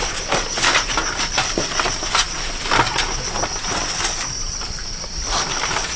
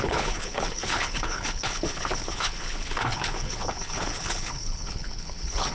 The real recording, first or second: first